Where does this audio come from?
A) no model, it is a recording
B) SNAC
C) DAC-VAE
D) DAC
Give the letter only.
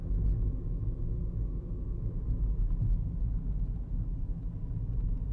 A